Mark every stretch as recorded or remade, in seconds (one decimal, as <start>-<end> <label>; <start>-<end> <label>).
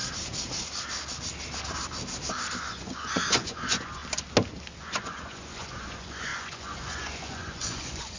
0.0-2.6 recorded; 2.6-4.0 remade; 4.0-4.8 recorded; 4.8-8.2 remade